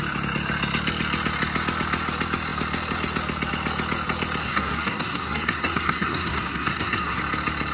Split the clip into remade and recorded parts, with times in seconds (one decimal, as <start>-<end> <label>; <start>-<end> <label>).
0.0-4.4 recorded; 4.4-7.2 remade; 7.2-7.7 recorded